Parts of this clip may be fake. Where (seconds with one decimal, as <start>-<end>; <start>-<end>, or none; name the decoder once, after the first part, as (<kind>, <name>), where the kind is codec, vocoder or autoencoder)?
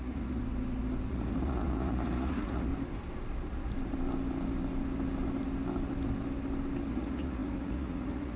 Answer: 0.0-0.4 (vocoder, Vocos); 1.1-2.7; 6.9-8.4